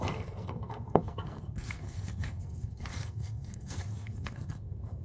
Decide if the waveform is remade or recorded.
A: remade